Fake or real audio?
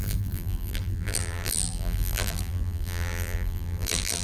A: fake